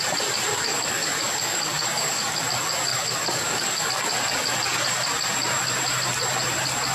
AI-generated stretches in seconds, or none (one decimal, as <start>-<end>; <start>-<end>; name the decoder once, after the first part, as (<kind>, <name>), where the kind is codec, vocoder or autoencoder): 0.5-2.4 (codec, DAC); 2.9-3.9